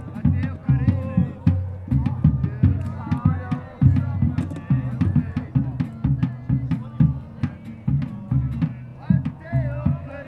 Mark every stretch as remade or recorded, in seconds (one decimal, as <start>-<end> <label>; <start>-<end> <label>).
0.0-8.9 recorded; 8.9-9.5 remade; 9.5-10.3 recorded